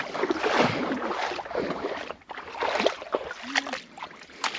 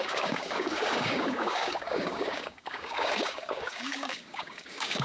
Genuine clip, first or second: first